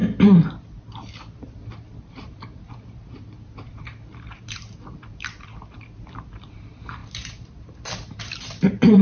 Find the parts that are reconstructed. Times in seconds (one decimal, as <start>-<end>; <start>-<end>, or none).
1.3-9.0